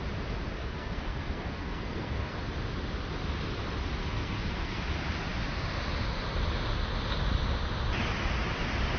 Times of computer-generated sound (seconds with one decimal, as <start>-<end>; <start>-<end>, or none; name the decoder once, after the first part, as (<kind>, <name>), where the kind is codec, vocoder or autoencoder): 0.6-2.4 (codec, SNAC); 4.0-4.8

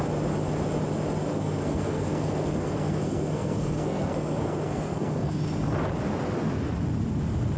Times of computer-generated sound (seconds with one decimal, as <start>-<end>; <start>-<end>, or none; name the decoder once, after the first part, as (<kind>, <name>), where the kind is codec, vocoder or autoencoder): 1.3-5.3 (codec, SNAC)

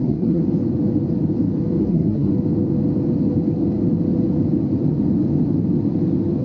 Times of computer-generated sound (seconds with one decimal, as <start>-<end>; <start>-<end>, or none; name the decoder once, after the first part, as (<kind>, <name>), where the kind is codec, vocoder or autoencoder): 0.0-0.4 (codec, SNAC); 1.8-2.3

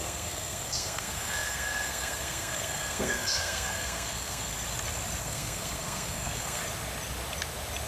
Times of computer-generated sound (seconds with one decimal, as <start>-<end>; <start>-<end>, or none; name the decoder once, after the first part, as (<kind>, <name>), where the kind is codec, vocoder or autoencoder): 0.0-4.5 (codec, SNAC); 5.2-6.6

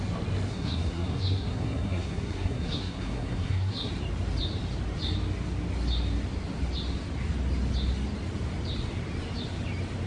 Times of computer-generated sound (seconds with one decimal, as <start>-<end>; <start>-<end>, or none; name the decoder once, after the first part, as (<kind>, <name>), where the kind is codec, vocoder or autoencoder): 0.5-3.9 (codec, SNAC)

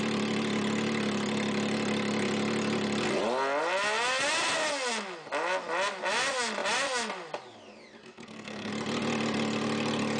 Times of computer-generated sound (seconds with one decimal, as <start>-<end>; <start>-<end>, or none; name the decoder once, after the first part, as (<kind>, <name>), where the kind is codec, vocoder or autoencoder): 8.0-8.7 (codec, SNAC)